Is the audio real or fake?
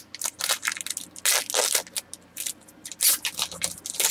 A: real